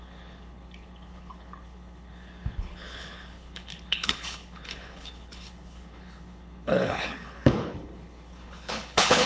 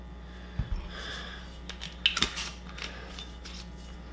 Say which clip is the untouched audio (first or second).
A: second